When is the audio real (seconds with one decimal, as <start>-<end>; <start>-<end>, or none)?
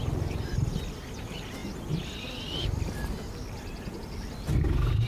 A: 0.0-5.1